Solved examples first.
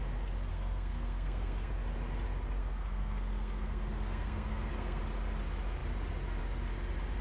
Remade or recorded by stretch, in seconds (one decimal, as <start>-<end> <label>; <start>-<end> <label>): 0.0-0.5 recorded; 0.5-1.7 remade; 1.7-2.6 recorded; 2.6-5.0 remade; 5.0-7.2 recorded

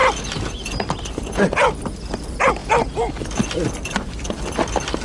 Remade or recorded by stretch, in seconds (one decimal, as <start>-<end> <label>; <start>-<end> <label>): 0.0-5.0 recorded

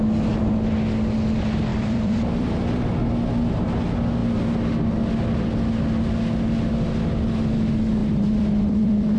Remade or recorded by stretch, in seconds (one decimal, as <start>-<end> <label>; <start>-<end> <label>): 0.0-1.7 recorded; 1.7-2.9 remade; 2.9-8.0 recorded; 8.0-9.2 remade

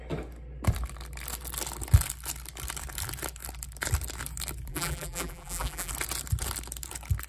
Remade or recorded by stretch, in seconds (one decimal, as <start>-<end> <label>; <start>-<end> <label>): 0.0-4.7 recorded; 4.7-5.9 remade; 5.9-7.3 recorded